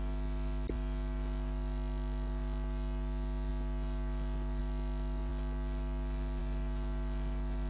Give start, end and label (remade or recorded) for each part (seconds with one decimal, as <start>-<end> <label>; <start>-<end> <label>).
0.0-7.7 recorded